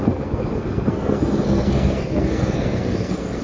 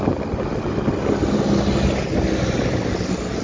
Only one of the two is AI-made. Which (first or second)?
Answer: first